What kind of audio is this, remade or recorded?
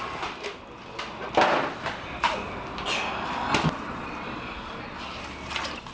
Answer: recorded